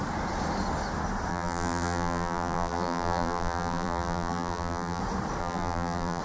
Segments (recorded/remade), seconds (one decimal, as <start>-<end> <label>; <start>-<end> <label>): 0.0-1.3 recorded; 1.3-5.0 remade; 5.0-5.4 recorded; 5.4-6.2 remade